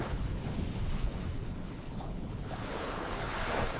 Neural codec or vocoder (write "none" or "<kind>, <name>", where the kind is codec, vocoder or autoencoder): codec, HILCodec